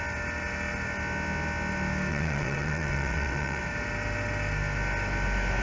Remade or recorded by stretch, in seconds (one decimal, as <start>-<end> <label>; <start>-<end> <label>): 0.0-2.1 recorded; 2.1-3.6 remade; 3.6-5.6 recorded